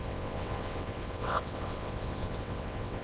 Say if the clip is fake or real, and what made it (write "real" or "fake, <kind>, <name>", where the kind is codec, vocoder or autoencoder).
fake, vocoder, WaveNeXt